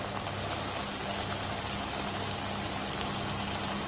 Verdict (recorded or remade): recorded